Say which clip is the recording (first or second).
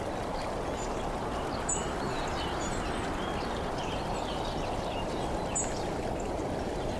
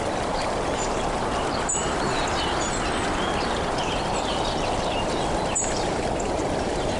first